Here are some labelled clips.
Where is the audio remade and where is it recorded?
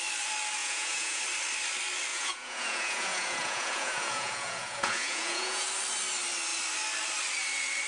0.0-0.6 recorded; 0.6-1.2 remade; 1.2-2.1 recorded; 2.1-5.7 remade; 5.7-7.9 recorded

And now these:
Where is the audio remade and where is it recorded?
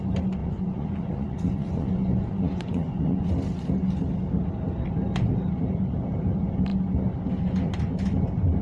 0.0-0.4 recorded; 0.4-3.3 remade; 3.3-8.6 recorded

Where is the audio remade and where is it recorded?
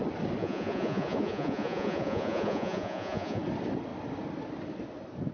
0.0-0.4 recorded; 0.4-3.4 remade; 3.4-5.3 recorded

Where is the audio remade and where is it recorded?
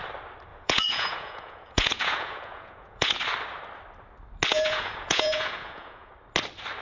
0.0-0.5 recorded; 0.5-3.2 remade; 3.2-4.5 recorded; 4.5-6.1 remade; 6.1-6.8 recorded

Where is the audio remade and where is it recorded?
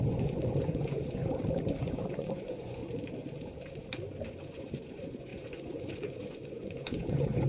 0.0-1.2 remade; 1.2-1.8 recorded; 1.8-2.8 remade; 2.8-4.3 recorded; 4.3-7.5 remade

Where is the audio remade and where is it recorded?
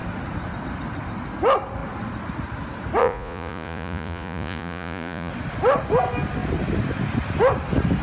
0.0-3.0 recorded; 3.0-5.3 remade; 5.3-8.0 recorded